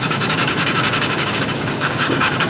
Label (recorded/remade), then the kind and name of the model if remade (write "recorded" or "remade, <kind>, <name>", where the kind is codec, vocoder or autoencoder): remade, codec, DAC